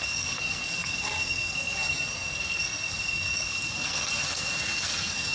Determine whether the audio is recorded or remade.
remade